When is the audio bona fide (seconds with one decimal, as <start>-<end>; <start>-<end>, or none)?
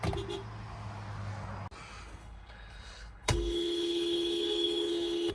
0.0-2.2